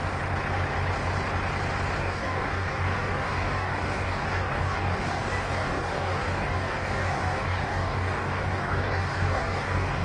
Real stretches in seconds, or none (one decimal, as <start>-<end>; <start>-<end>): 0.0-2.0